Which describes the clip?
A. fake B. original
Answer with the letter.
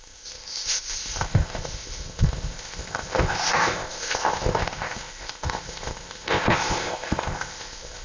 A